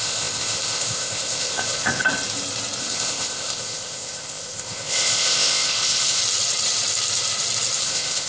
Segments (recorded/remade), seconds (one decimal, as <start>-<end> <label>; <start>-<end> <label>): 0.0-2.0 remade; 2.0-2.8 recorded; 2.8-6.2 remade; 6.2-7.8 recorded; 7.8-8.3 remade